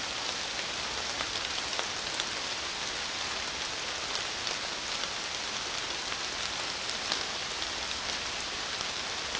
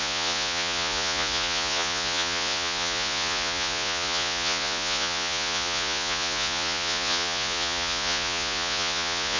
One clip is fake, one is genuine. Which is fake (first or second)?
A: second